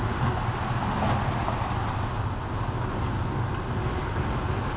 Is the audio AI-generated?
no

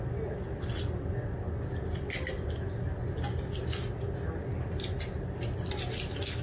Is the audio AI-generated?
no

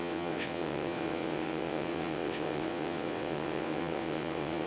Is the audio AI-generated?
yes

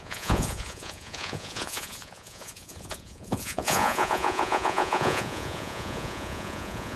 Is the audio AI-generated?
yes